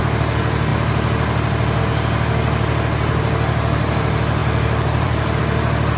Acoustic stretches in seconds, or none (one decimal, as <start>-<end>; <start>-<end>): 0.0-4.4; 5.4-6.0